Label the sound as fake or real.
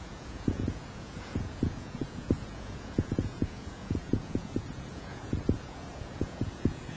fake